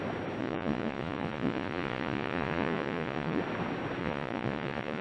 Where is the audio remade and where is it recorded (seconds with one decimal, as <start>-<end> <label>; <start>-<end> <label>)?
0.0-0.4 recorded; 0.4-3.4 remade; 3.4-4.0 recorded; 4.0-5.0 remade